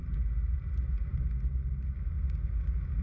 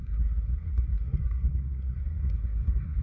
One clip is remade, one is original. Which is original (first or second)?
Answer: first